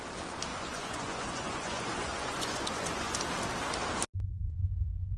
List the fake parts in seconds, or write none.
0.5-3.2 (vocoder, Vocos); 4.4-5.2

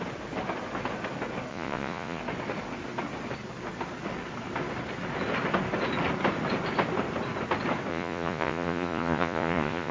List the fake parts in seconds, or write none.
1.5-2.2 (vocoder, Vocos); 7.9-9.9

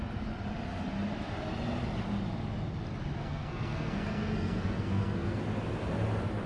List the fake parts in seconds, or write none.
3.2-5.4 (codec, SNAC)

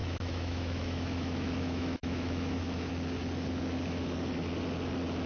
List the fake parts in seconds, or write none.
0.0-2.9 (autoencoder, DAC-VAE)

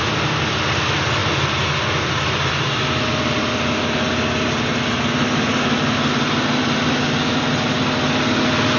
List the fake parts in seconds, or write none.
none

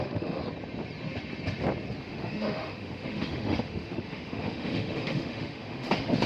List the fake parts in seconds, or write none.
0.0-0.4 (autoencoder, DAC-VAE); 2.0-6.3

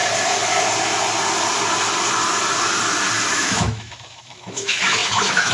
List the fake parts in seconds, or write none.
3.3-5.5 (autoencoder, DAC-VAE)